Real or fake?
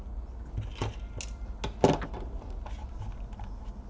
real